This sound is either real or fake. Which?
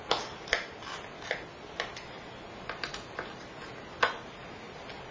real